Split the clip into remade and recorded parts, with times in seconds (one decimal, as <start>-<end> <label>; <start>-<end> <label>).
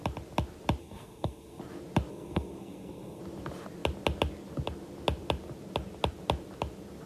0.0-0.8 recorded; 0.8-1.6 remade; 1.6-2.1 recorded; 2.1-3.2 remade; 3.2-7.1 recorded